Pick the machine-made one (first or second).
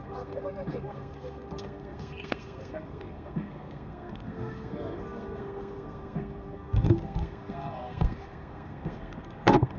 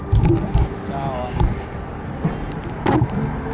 first